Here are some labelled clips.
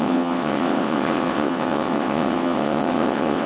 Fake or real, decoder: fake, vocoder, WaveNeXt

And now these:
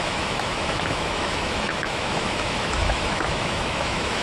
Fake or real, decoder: fake, autoencoder, DAC-VAE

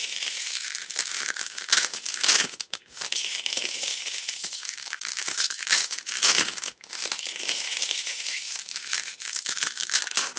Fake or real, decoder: fake, autoencoder, DAC-VAE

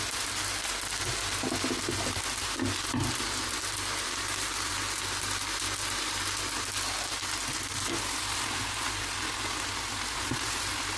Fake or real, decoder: real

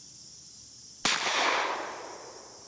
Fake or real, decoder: real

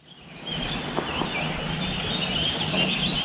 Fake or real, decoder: real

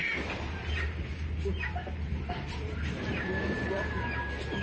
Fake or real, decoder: real